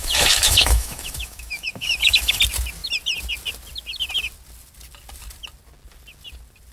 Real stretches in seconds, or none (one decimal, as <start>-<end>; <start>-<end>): 2.4-6.7